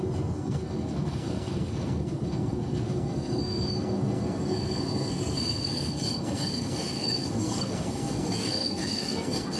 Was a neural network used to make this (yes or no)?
yes